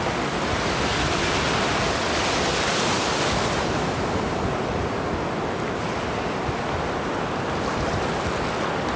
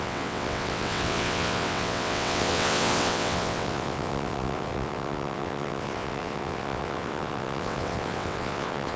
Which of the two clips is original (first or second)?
first